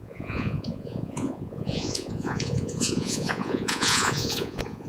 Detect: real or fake fake